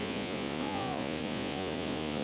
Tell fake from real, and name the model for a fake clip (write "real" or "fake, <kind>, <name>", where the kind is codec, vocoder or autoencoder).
fake, vocoder, Vocos